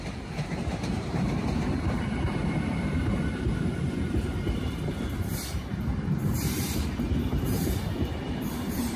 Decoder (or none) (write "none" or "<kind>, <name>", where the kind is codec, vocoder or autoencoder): vocoder, BigVGAN v2